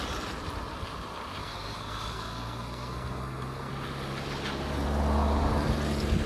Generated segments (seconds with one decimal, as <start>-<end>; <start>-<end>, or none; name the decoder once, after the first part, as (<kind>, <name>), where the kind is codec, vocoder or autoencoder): 1.4-3.7 (codec, SNAC)